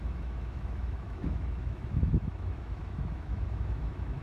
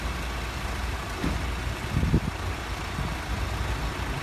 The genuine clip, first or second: second